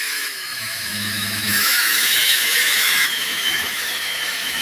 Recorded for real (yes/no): no